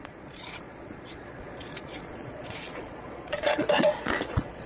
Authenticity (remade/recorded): remade